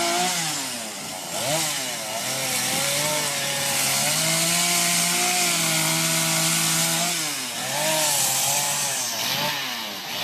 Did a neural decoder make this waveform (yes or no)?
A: no